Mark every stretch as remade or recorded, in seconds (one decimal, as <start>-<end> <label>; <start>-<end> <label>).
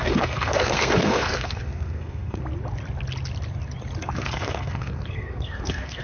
0.0-2.4 remade; 2.4-4.0 recorded; 4.0-6.0 remade